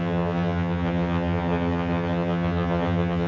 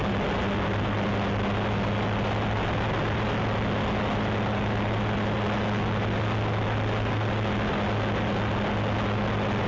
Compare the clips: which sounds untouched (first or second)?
second